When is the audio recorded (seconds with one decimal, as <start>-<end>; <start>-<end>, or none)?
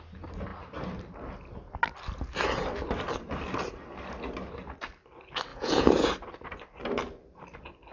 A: 0.0-5.5; 6.1-7.9